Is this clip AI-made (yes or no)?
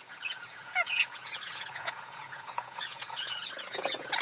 yes